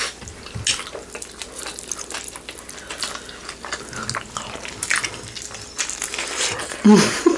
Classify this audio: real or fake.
real